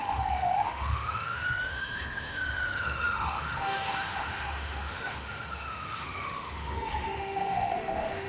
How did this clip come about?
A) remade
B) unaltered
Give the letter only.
A